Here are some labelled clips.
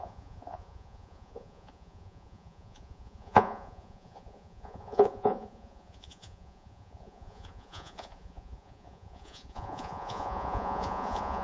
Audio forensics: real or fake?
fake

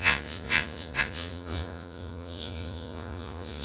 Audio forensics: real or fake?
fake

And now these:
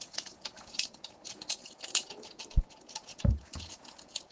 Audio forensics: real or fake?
fake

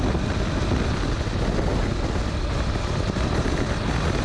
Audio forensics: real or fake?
real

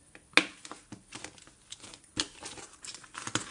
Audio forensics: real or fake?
real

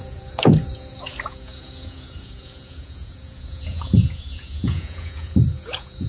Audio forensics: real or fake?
fake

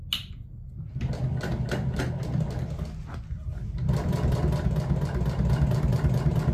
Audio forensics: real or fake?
real